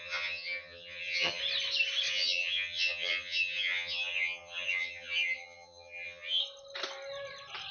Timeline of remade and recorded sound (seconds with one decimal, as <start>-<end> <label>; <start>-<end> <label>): 0.0-1.4 remade; 1.4-2.1 recorded; 2.1-6.4 remade; 6.4-7.7 recorded

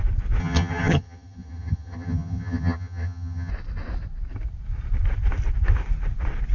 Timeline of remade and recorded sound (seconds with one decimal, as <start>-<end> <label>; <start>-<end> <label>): 0.0-0.4 recorded; 0.4-3.5 remade; 3.5-6.5 recorded

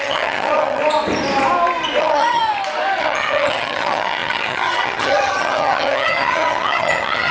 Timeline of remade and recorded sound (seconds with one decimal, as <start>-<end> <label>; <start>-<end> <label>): 0.0-0.8 remade; 0.8-2.0 recorded; 2.0-2.4 remade; 2.4-3.0 recorded; 3.0-7.3 remade

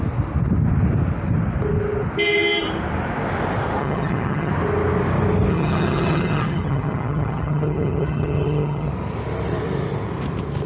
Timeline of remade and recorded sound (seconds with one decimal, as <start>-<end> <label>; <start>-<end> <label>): 0.0-3.8 recorded; 3.8-4.5 remade; 4.5-5.5 recorded; 5.5-8.9 remade; 8.9-10.7 recorded

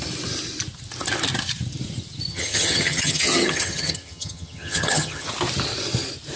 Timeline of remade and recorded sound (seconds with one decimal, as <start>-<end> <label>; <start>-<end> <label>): 0.0-2.3 recorded; 2.3-5.3 remade; 5.3-6.4 recorded

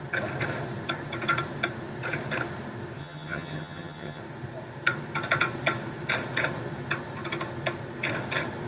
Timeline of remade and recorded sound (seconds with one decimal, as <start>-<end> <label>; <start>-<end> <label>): 0.0-3.0 recorded; 3.0-4.2 remade; 4.2-8.7 recorded

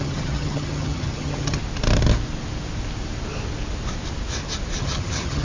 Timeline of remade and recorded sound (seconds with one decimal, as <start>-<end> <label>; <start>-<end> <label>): 0.0-1.6 remade; 1.6-4.8 recorded; 4.8-5.4 remade

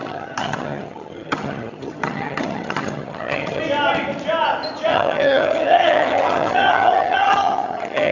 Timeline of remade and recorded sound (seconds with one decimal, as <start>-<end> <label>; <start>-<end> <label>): 0.0-3.6 remade; 3.6-4.9 recorded; 4.9-8.1 remade